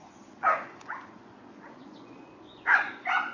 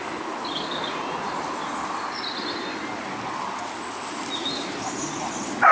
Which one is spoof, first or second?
first